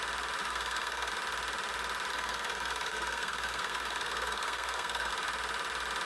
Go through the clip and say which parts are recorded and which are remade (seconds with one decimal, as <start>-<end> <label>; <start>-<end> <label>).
0.0-0.4 recorded; 0.4-1.1 remade; 1.1-2.1 recorded; 2.1-5.1 remade; 5.1-6.0 recorded